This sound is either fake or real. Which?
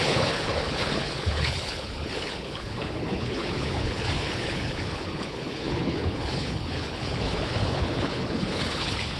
fake